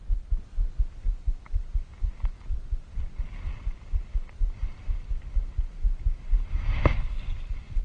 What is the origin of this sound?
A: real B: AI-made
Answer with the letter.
A